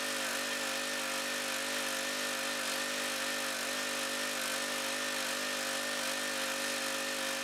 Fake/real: real